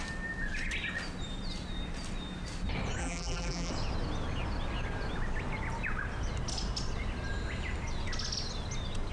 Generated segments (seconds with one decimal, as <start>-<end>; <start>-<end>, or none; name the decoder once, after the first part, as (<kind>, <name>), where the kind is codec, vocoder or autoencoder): 3.0-3.7 (vocoder, BigVGAN v2)